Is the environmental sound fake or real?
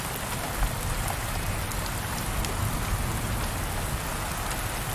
real